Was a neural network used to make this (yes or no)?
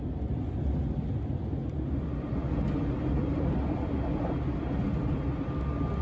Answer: no